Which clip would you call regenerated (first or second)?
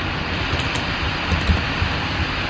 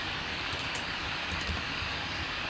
second